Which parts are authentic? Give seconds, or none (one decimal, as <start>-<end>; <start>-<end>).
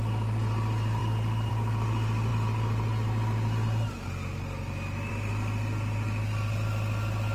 0.0-7.3